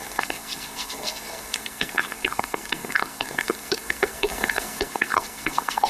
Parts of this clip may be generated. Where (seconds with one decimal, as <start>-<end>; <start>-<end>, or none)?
0.0-5.9